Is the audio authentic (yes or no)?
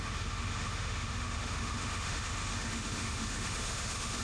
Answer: no